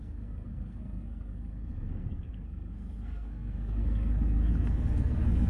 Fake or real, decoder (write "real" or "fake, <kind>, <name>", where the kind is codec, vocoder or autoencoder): fake, codec, SNAC